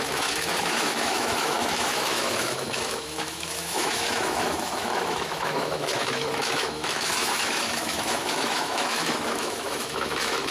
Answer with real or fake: fake